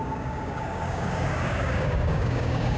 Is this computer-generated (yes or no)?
yes